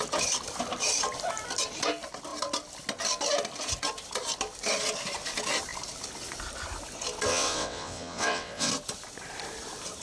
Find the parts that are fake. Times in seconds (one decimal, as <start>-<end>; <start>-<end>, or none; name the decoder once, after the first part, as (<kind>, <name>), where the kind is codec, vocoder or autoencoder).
7.3-8.7 (vocoder, WaveNeXt)